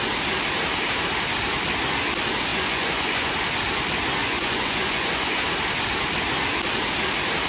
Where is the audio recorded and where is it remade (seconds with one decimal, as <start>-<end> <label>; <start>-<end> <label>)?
0.0-2.5 recorded; 2.5-3.3 remade; 3.3-4.2 recorded; 4.2-5.4 remade; 5.4-7.5 recorded